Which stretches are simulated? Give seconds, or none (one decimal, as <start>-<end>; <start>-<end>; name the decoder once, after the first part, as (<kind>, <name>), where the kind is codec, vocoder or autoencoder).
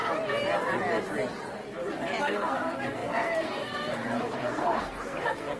2.2-5.6 (codec, SNAC)